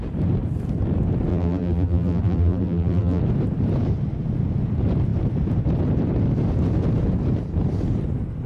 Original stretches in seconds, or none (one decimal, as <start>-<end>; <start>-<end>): 0.0-1.3; 3.2-8.5